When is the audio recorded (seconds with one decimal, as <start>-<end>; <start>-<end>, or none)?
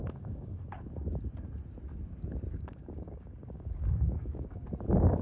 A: 0.6-2.5; 4.7-5.2